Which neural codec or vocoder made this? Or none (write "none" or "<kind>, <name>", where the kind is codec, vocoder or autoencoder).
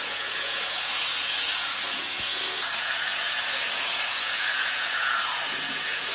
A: vocoder, Vocos